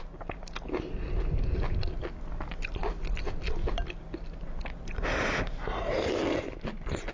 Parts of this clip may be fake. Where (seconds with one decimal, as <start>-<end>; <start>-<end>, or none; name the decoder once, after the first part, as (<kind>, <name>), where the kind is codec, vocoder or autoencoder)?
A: none